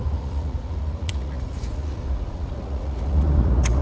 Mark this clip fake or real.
fake